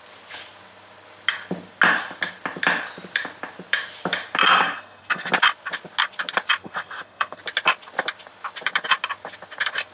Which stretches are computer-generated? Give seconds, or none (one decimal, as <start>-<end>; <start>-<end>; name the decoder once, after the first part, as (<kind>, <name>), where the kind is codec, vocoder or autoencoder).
4.4-5.3 (codec, SNAC); 6.6-7.4